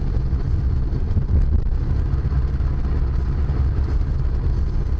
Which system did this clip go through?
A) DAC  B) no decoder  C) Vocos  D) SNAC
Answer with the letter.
B